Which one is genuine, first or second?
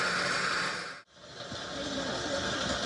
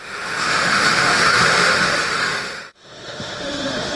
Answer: first